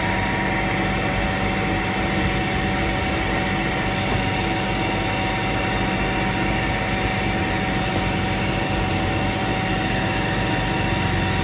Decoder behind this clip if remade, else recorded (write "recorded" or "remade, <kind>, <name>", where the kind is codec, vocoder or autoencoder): recorded